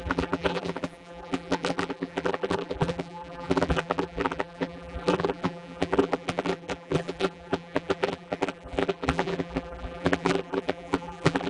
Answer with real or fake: fake